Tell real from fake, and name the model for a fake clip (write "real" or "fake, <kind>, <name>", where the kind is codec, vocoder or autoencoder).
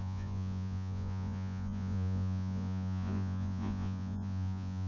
fake, vocoder, Vocos